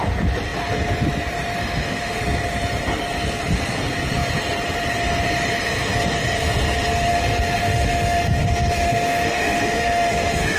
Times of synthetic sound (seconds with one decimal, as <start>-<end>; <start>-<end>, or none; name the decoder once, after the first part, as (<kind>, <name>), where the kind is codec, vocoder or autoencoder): 1.6-2.2 (autoencoder, DAC-VAE); 7.1-10.6